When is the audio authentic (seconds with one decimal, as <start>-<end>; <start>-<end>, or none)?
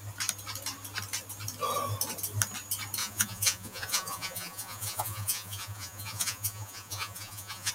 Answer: 0.0-3.0